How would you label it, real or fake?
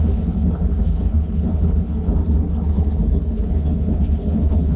fake